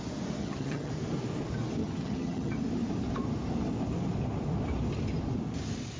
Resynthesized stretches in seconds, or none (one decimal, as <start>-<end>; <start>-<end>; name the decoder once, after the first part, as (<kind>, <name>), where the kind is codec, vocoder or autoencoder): 0.4-0.9 (vocoder, HiFi-GAN); 1.8-2.6